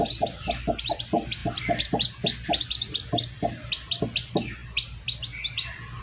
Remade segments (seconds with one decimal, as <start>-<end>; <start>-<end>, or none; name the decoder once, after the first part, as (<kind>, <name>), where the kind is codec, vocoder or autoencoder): none